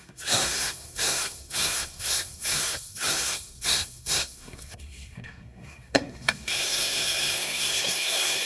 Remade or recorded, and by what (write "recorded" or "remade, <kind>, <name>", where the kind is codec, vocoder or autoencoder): remade, codec, SNAC